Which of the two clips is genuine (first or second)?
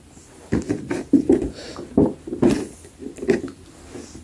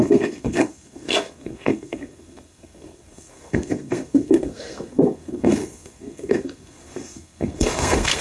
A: first